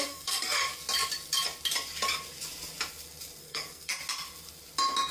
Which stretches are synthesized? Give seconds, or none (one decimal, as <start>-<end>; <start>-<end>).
0.0-0.7; 3.4-3.9